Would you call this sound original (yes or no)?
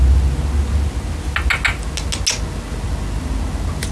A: yes